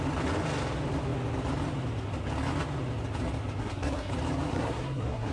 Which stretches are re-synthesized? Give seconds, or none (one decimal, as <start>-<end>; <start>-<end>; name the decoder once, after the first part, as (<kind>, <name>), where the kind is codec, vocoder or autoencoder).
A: 3.6-4.1 (codec, SNAC); 4.5-5.3